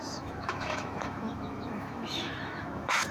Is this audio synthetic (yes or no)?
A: yes